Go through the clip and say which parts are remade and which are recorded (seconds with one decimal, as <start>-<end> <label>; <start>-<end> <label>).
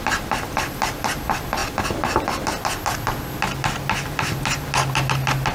0.0-5.5 recorded